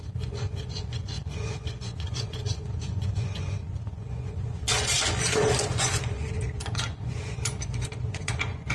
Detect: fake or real fake